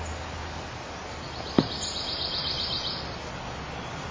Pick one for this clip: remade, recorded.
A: recorded